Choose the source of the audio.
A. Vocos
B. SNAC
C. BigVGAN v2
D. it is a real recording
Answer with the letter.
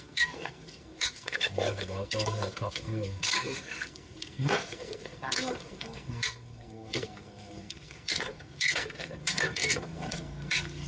B